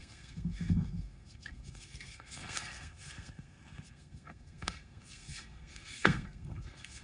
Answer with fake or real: fake